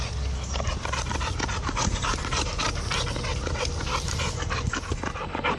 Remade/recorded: recorded